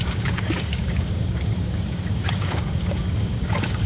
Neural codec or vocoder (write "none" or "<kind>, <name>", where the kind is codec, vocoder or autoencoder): codec, DAC